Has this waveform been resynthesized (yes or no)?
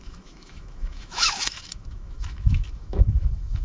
yes